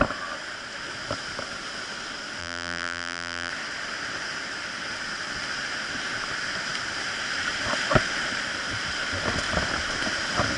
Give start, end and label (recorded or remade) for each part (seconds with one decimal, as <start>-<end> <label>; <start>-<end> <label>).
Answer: 0.0-2.4 recorded; 2.4-3.5 remade; 3.5-10.6 recorded